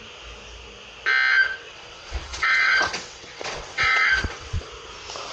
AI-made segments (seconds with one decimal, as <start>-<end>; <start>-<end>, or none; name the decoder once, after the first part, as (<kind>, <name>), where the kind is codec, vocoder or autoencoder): 1.5-4.7 (vocoder, WaveNeXt)